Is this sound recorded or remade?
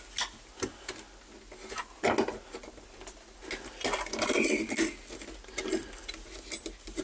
recorded